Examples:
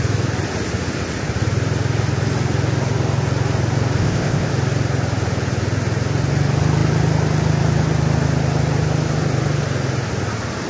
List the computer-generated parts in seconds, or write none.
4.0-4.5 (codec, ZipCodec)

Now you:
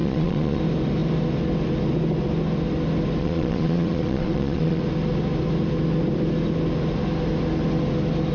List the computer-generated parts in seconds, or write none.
0.0-0.6 (vocoder, Vocos); 3.2-4.8